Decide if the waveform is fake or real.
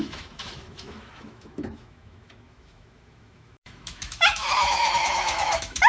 fake